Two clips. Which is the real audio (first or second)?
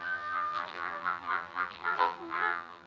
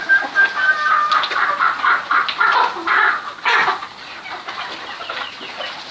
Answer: second